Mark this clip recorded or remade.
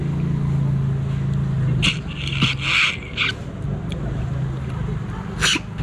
recorded